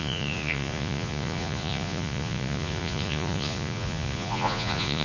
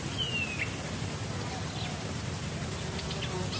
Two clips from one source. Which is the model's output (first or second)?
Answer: first